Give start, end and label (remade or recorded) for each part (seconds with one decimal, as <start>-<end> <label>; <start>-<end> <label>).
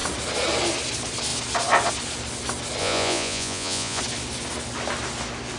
0.0-2.8 recorded; 2.8-4.0 remade; 4.0-5.6 recorded